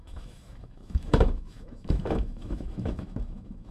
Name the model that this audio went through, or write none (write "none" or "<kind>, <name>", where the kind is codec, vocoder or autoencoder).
autoencoder, DAC-VAE